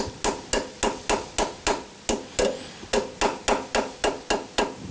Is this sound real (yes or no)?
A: yes